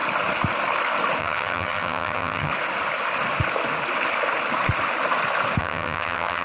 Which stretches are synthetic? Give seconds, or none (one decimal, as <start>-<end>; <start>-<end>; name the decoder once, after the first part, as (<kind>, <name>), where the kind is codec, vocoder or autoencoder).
1.2-2.5 (vocoder, HiFi-GAN); 5.6-6.4